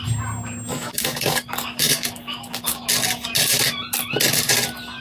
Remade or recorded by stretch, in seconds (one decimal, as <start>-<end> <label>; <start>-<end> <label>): 0.0-0.7 recorded; 0.7-2.8 remade; 2.8-5.0 recorded